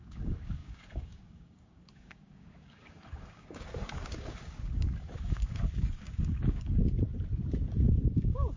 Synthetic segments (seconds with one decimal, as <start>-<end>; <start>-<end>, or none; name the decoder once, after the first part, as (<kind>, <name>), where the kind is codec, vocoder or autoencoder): 0.0-6.8 (codec, DAC); 8.0-8.6